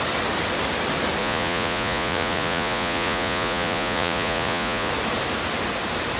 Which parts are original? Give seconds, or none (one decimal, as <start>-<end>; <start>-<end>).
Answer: 0.0-1.2; 4.9-6.2